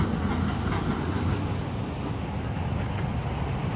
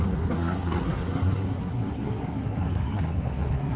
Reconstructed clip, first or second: second